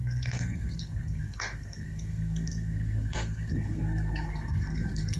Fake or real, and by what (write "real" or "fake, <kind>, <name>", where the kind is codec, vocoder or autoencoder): fake, codec, SNAC